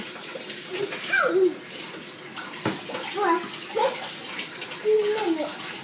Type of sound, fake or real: real